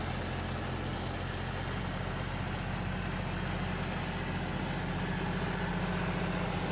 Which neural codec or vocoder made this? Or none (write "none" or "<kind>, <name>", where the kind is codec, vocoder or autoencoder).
none